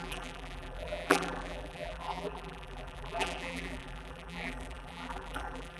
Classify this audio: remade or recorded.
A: remade